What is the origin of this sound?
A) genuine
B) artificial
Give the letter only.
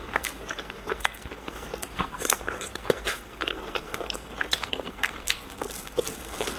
B